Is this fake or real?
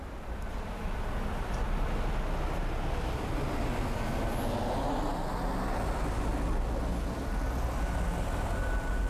real